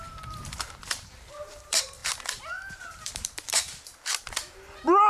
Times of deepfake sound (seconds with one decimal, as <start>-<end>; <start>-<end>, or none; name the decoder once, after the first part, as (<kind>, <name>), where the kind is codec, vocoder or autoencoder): 0.0-3.7 (vocoder, BigVGAN v2)